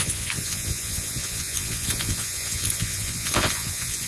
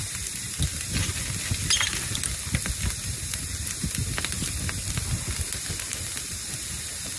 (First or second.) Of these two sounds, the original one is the second